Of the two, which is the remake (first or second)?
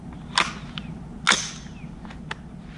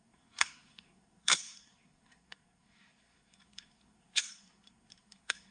second